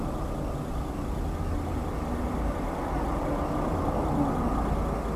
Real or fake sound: real